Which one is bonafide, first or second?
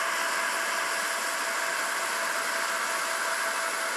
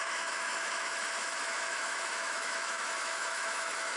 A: first